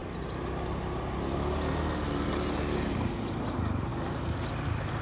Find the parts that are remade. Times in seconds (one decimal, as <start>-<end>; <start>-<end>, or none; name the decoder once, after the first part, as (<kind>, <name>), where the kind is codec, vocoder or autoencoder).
none